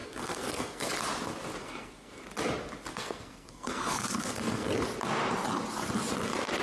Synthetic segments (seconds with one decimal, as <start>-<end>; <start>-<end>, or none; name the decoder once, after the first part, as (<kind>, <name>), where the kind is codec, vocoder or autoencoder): 0.0-0.9 (codec, SNAC); 1.6-2.2; 2.9-4.7

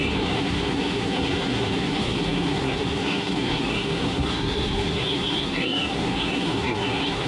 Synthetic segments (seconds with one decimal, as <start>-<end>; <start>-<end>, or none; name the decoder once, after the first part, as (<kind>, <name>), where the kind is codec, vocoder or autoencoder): 0.0-7.3 (codec, SNAC)